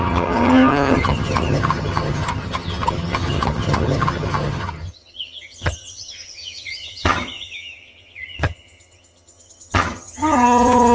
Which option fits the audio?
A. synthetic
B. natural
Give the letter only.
A